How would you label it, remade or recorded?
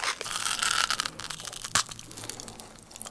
recorded